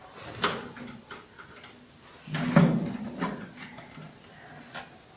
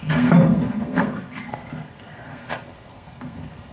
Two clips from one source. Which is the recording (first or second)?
first